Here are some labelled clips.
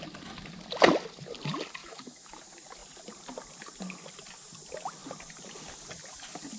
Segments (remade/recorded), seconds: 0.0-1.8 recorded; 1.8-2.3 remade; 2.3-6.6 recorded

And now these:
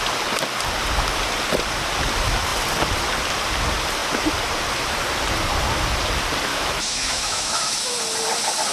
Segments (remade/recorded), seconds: 0.0-6.5 recorded; 6.5-8.0 remade; 8.0-8.7 recorded

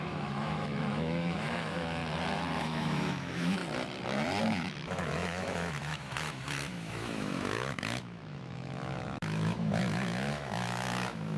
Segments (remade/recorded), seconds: 0.0-2.0 remade; 2.0-2.6 recorded; 2.6-3.6 remade; 3.6-4.4 recorded; 4.4-11.4 remade

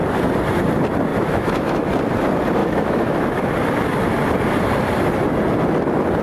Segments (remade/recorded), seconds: 0.0-1.1 recorded; 1.1-1.9 remade; 1.9-2.6 recorded; 2.6-3.4 remade; 3.4-6.2 recorded

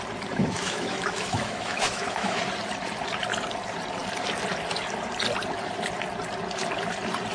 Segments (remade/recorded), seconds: 0.0-0.4 recorded; 0.4-2.4 remade; 2.4-7.3 recorded

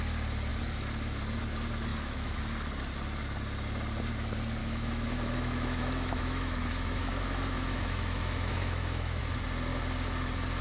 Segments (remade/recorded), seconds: 0.0-1.9 recorded; 1.9-2.4 remade; 2.4-4.6 recorded; 4.6-9.2 remade; 9.2-10.6 recorded

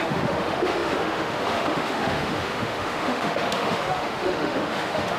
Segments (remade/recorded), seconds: 0.0-5.2 remade